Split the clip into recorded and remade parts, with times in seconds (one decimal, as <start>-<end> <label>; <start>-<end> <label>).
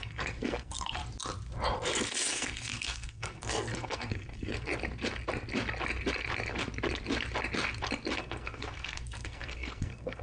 0.0-1.0 remade; 1.0-2.3 recorded; 2.3-4.7 remade; 4.7-8.2 recorded; 8.2-10.2 remade